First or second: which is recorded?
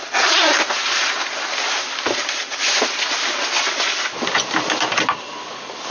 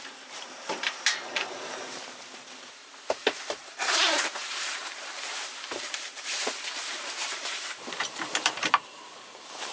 first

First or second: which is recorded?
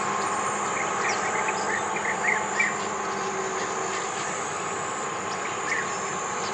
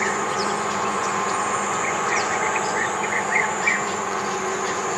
first